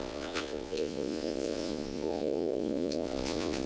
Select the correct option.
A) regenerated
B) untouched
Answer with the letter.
A